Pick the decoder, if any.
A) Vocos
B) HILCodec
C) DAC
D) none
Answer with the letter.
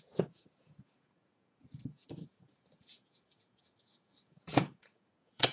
A